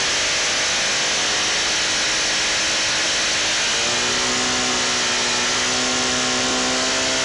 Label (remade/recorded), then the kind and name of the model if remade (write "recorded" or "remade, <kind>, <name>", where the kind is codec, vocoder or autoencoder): recorded